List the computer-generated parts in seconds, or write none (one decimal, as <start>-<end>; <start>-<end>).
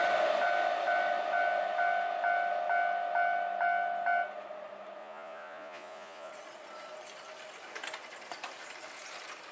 5.0-6.3